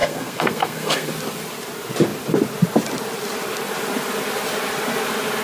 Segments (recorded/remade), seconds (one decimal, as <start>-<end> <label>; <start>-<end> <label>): 0.0-1.1 remade; 1.1-5.4 recorded